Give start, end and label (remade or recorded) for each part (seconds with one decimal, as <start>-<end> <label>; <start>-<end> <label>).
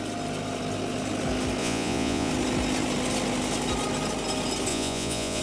0.0-1.6 recorded; 1.6-2.3 remade; 2.3-4.7 recorded; 4.7-5.4 remade